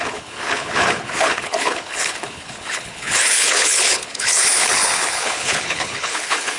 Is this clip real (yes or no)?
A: no